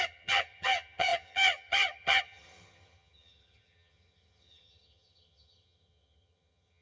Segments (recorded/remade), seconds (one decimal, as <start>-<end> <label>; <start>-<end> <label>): 0.0-6.8 remade